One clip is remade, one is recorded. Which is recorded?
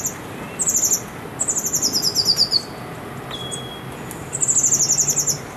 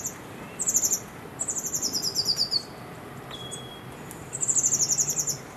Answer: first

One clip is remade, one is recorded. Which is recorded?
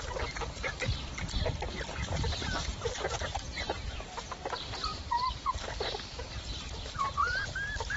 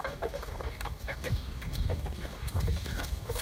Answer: first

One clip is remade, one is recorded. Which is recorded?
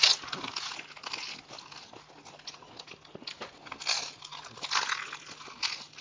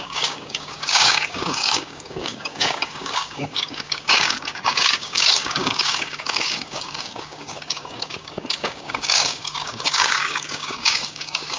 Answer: first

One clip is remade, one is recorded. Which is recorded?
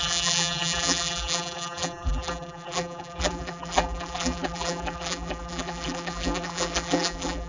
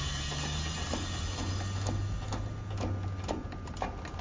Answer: second